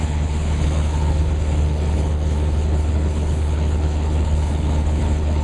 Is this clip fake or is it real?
fake